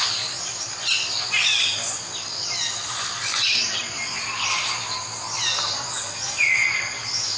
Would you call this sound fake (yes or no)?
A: no